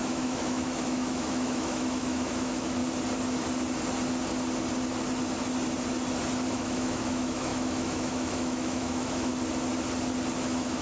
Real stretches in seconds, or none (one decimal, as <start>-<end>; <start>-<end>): 2.8-6.5; 9.3-10.4